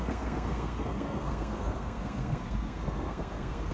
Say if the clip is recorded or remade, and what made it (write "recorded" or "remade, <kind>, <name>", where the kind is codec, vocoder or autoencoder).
remade, codec, SNAC